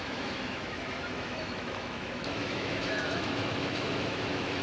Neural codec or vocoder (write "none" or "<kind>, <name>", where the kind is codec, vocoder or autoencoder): autoencoder, DAC-VAE